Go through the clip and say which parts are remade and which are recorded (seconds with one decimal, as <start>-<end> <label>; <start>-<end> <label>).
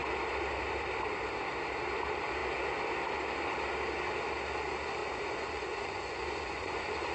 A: 0.0-5.0 recorded; 5.0-7.1 remade